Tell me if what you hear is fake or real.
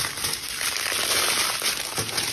real